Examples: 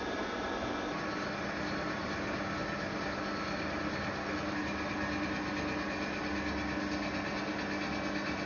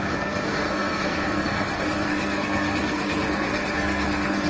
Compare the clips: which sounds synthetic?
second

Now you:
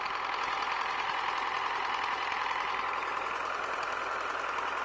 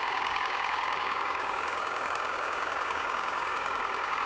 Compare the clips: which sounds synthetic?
second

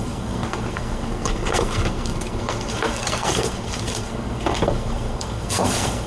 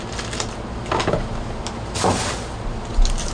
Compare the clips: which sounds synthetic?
first